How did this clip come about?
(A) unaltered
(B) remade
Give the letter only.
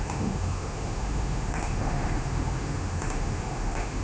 B